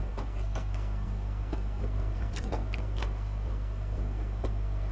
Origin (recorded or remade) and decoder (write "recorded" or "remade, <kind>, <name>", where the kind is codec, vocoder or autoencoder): remade, codec, SNAC